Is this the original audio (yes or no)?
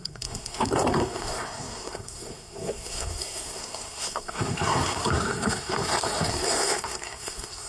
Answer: no